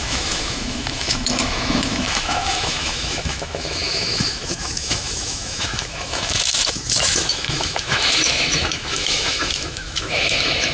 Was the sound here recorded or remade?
remade